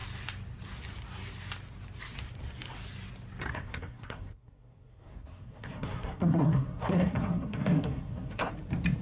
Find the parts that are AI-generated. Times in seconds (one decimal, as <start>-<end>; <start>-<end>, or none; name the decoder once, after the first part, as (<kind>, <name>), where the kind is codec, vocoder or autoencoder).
3.5-8.5 (codec, SNAC)